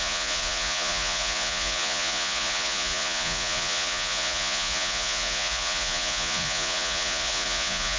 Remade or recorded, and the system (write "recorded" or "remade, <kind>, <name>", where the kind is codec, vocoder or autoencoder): remade, vocoder, Vocos